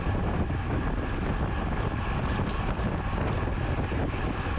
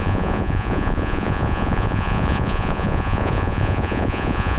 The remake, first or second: second